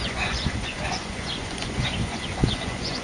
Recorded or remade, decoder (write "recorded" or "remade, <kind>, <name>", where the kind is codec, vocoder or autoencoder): remade, vocoder, Vocos